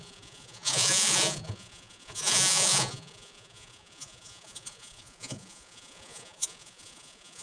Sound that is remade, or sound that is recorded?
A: remade